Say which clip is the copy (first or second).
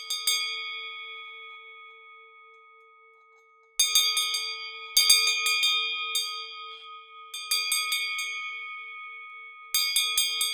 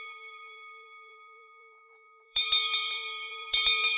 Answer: second